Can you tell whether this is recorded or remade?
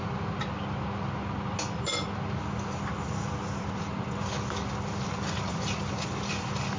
recorded